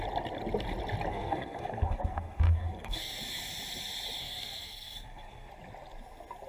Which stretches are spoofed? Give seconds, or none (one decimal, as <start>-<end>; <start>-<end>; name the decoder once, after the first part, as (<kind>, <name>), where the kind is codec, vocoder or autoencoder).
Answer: 1.1-3.2 (codec, SNAC); 4.2-5.5